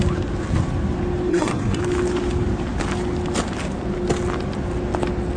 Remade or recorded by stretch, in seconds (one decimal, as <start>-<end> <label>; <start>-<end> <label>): 0.0-1.3 recorded; 1.3-1.8 remade; 1.8-5.4 recorded